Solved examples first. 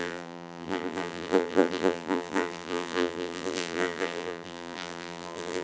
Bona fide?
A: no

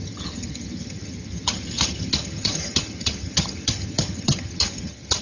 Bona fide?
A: no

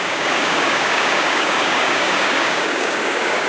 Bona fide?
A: no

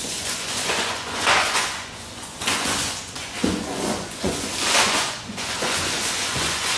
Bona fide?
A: no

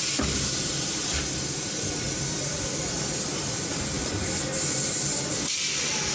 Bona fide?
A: yes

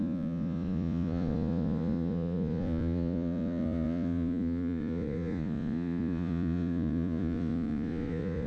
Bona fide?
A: no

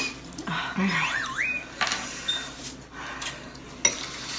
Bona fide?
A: yes